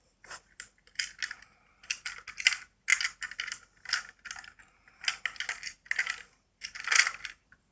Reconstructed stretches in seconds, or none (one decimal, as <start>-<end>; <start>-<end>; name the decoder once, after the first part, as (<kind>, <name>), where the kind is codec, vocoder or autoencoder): none